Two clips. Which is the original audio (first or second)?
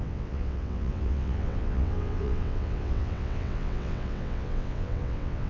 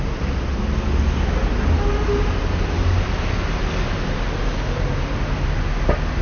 second